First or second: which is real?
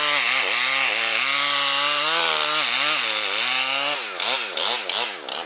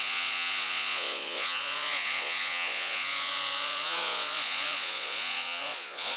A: first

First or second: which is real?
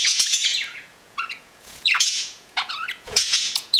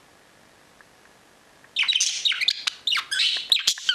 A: second